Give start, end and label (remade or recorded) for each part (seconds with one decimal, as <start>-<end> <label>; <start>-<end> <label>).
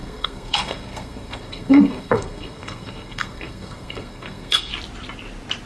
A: 0.0-4.7 remade; 4.7-5.7 recorded